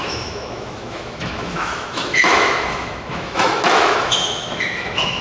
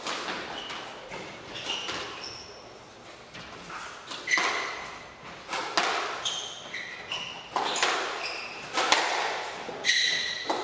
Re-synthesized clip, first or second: first